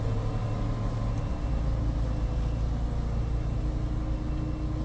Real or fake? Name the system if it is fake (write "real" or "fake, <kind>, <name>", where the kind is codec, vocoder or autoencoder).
real